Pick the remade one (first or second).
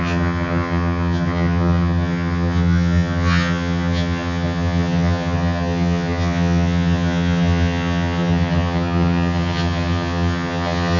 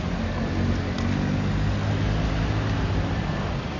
first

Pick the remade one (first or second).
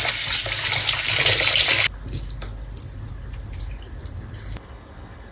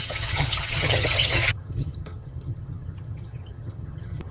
second